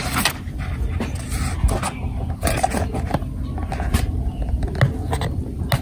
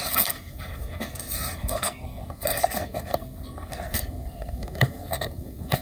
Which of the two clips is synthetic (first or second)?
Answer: second